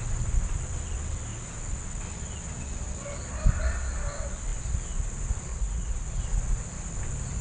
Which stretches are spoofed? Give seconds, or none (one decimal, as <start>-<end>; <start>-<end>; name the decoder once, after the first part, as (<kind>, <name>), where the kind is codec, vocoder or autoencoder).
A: 5.5-6.2 (vocoder, Vocos)